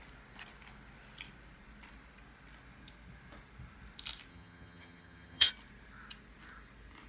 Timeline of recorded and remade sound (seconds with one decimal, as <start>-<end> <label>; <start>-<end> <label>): 0.0-4.3 recorded; 4.3-5.5 remade; 5.5-7.1 recorded